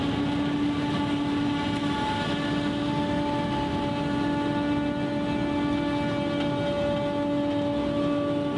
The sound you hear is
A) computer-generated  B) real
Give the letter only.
B